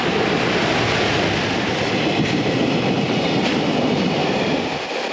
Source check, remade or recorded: recorded